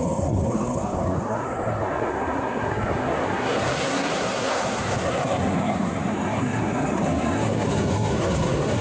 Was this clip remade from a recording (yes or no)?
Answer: yes